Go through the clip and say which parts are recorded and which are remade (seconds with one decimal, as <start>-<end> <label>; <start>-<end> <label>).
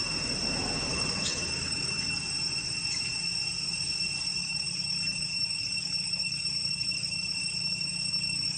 0.0-0.9 recorded; 0.9-2.2 remade; 2.2-4.4 recorded; 4.4-8.6 remade